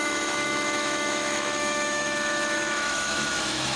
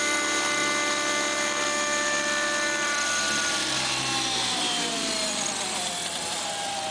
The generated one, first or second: first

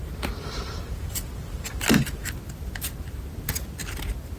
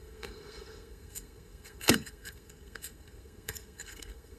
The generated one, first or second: second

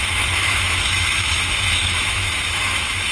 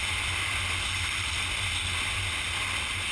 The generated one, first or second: first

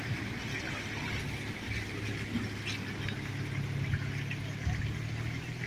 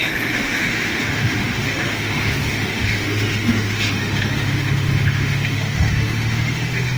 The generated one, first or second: second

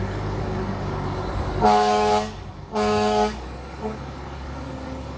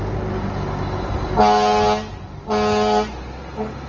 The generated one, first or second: first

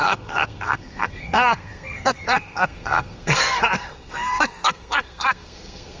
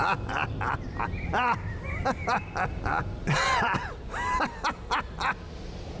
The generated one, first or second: first